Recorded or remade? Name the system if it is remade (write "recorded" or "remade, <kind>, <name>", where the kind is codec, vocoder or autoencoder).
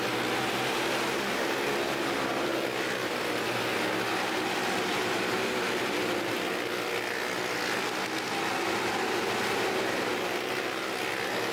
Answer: recorded